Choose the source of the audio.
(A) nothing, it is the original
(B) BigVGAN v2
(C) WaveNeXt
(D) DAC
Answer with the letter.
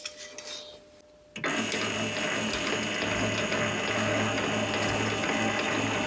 A